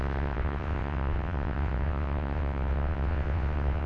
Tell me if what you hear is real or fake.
fake